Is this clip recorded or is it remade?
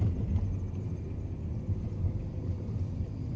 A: recorded